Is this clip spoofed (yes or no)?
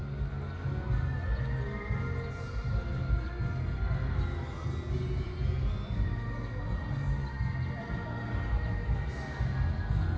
no